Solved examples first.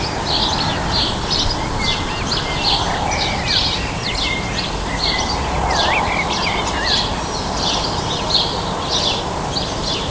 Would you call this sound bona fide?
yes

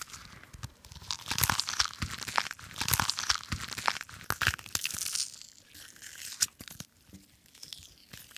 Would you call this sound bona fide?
yes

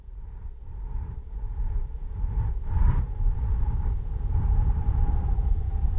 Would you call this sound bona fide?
no